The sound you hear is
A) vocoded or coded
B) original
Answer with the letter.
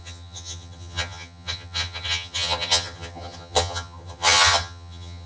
A